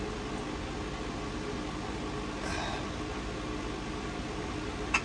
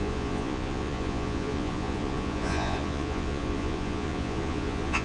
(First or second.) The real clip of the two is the first